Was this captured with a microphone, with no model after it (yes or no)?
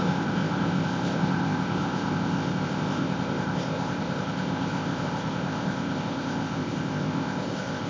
no